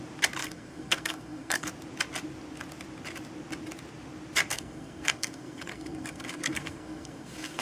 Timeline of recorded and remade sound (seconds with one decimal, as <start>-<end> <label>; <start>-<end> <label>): 0.0-0.4 recorded; 0.4-1.7 remade; 1.7-4.5 recorded; 4.5-7.6 remade